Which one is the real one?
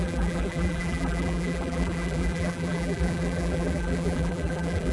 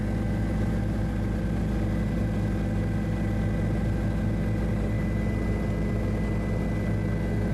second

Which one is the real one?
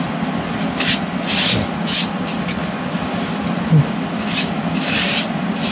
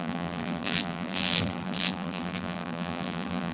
first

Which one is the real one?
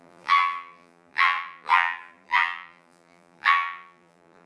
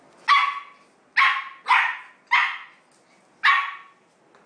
second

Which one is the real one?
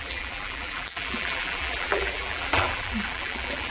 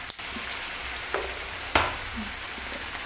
second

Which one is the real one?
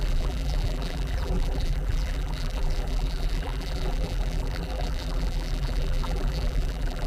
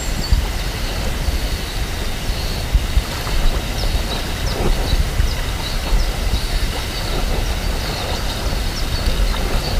second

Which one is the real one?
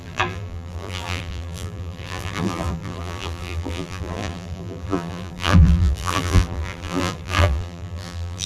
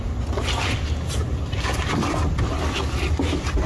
second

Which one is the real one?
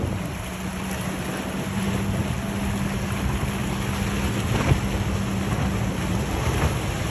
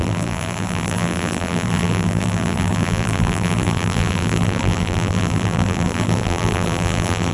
first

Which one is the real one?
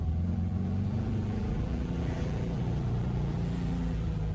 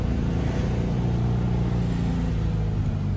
second